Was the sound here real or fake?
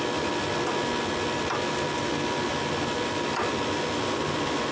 real